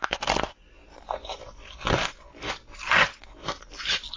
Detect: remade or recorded recorded